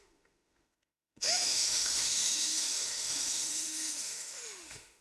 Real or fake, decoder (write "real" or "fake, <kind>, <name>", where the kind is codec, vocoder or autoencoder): fake, autoencoder, DAC-VAE